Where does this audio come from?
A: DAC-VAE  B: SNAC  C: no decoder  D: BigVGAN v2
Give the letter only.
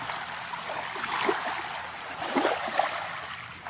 C